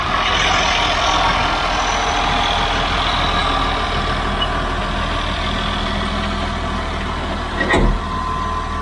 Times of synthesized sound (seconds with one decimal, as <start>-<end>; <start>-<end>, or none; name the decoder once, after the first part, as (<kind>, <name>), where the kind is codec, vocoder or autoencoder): none